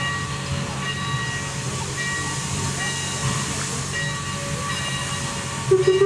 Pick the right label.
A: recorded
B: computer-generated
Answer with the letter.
A